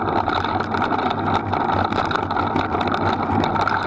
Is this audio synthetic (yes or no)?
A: no